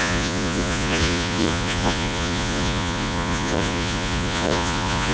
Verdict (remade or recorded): remade